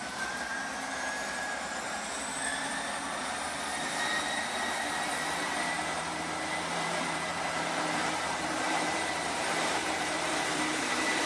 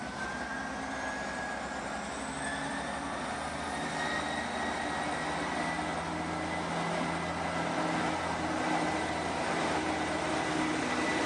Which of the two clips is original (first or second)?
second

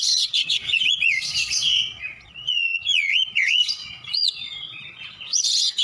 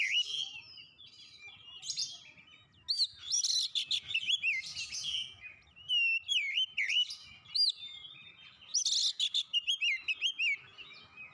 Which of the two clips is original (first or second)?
second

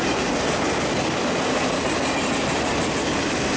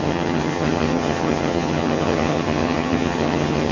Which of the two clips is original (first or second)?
first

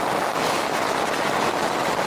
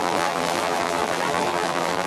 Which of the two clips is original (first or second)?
first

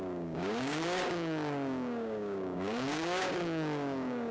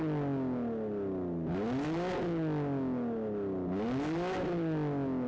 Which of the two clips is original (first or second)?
second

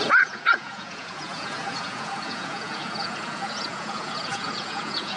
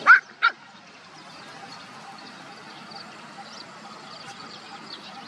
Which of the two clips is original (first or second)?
second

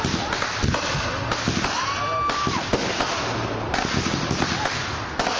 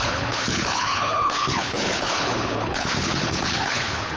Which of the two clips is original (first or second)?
first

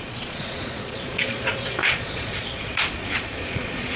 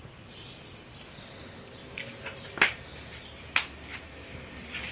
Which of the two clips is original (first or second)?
second